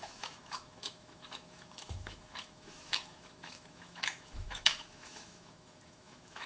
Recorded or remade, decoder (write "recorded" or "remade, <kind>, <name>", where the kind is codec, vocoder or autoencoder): remade, autoencoder, DAC-VAE